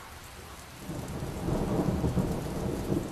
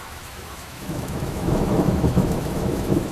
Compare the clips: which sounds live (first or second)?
first